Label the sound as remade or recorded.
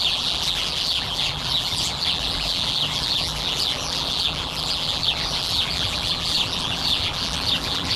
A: remade